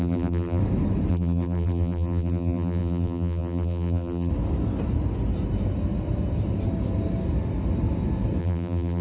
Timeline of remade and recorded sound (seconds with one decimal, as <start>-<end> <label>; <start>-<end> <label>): 0.0-0.6 remade; 0.6-1.1 recorded; 1.1-4.3 remade; 4.3-8.4 recorded; 8.4-9.0 remade